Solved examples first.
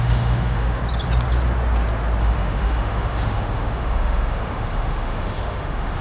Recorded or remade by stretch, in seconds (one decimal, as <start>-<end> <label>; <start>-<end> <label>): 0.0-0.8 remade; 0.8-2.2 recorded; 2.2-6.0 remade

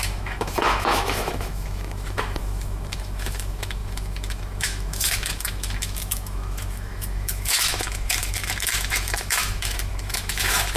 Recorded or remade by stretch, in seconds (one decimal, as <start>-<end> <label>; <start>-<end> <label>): 0.0-10.8 remade

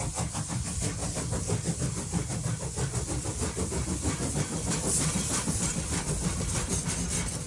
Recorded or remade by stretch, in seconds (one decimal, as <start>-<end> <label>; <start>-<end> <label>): 0.0-7.5 recorded

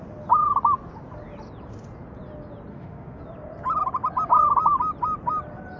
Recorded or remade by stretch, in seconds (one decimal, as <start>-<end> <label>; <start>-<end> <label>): 0.0-2.7 recorded; 2.7-3.2 remade; 3.2-5.8 recorded

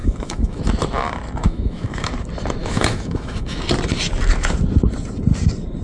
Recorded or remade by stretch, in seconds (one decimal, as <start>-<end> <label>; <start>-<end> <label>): 0.0-0.6 remade; 0.6-1.4 recorded; 1.4-2.1 remade; 2.1-2.6 recorded; 2.6-3.6 remade; 3.6-5.8 recorded

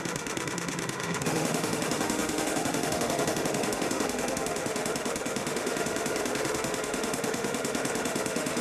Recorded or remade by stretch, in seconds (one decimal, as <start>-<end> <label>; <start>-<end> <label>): 0.0-8.6 remade

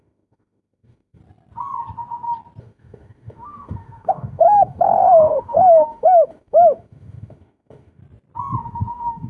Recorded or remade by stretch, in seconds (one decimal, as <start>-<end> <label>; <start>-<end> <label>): 0.0-1.2 remade; 1.2-2.6 recorded; 2.6-8.0 remade; 8.0-8.6 recorded; 8.6-9.3 remade

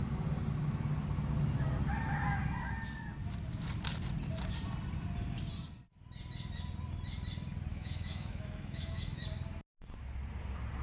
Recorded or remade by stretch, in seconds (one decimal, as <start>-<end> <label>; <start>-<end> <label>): 0.0-7.7 recorded; 7.7-9.2 remade; 9.2-10.8 recorded